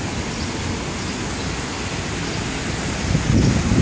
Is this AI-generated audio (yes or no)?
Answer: no